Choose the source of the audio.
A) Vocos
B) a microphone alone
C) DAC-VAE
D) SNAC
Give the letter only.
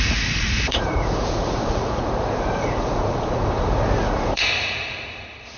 A